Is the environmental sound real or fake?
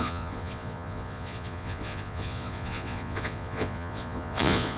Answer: fake